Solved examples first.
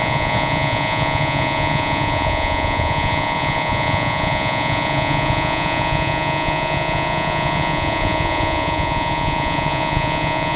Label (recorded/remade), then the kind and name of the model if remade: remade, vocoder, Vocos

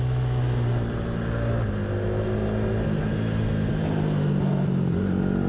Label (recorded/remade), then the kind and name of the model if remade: recorded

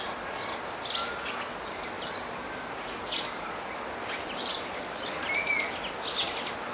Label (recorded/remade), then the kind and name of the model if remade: recorded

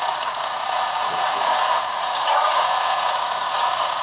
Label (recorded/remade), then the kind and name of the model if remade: remade, vocoder, Vocos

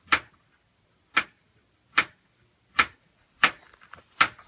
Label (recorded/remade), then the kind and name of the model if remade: recorded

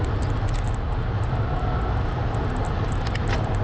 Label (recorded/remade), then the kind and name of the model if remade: recorded